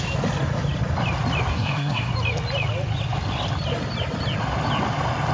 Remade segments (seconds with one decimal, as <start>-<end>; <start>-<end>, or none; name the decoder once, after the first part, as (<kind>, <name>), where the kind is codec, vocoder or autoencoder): 1.5-2.1 (codec, SNAC)